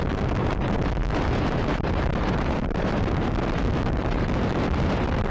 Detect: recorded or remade remade